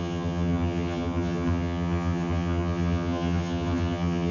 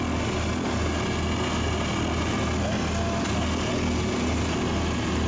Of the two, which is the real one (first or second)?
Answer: second